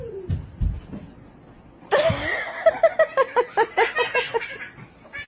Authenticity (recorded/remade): recorded